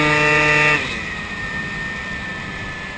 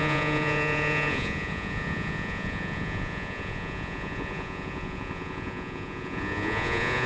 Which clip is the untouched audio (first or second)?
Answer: first